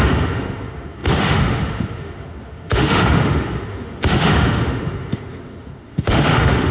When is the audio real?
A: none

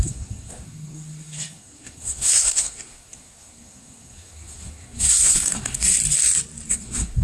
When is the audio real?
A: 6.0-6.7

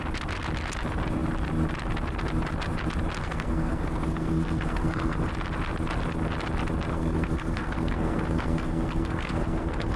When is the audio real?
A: 0.0-3.2; 5.3-6.9

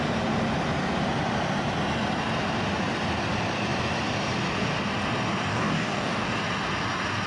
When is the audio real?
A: 0.0-5.5; 6.3-7.3

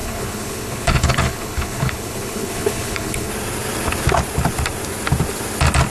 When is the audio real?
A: 3.3-5.9